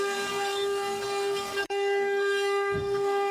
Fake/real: fake